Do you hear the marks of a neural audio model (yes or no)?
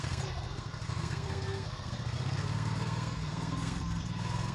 yes